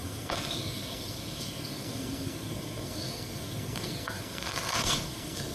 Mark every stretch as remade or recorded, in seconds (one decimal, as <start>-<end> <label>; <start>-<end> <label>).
0.0-5.5 remade